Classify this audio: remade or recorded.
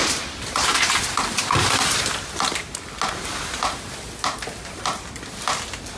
recorded